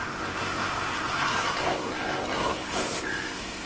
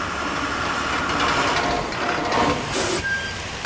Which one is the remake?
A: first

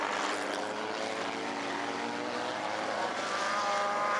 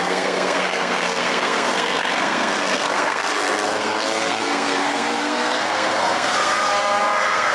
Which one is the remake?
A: second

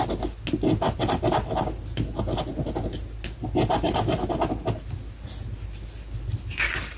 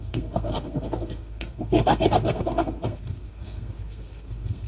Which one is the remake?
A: second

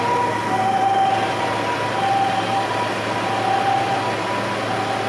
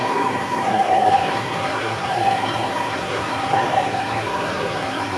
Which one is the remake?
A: second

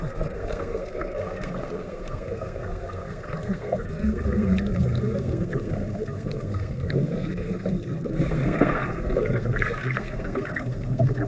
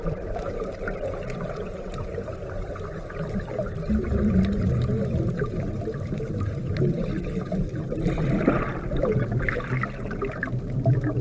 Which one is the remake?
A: first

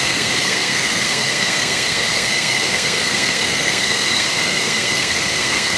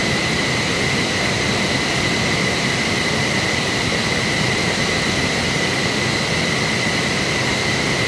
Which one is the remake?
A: first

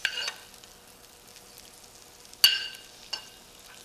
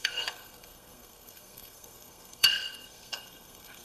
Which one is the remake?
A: second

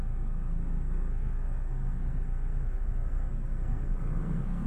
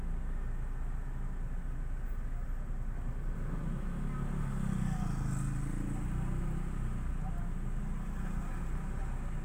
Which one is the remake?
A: first